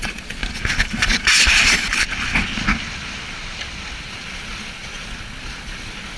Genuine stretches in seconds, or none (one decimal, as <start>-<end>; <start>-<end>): 0.4-4.1